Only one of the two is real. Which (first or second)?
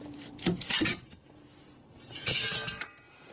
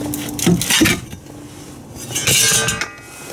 second